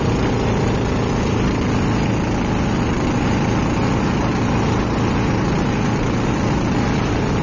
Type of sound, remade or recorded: recorded